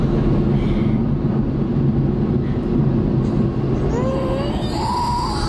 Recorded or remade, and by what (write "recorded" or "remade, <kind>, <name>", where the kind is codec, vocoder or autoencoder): recorded